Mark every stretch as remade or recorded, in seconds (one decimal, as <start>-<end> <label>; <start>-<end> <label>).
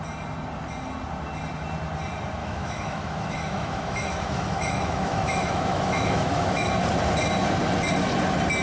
0.0-2.4 recorded; 2.4-6.7 remade; 6.7-8.6 recorded